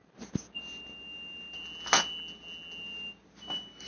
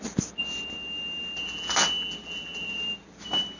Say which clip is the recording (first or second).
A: first